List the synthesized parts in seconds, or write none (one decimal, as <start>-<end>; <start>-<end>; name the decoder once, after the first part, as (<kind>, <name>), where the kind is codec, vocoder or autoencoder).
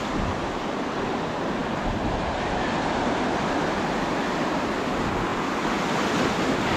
none